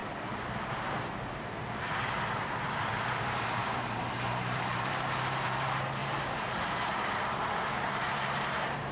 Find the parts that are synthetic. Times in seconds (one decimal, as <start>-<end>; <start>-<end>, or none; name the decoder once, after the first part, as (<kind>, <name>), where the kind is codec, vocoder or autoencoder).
0.0-8.9 (vocoder, BigVGAN v2)